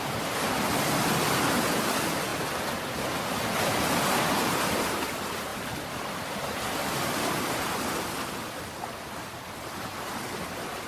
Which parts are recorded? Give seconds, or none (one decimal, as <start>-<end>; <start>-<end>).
0.0-10.9